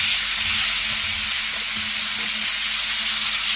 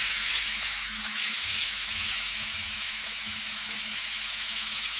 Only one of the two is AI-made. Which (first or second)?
second